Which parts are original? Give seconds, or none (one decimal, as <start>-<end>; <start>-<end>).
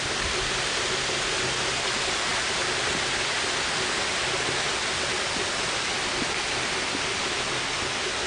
0.0-8.3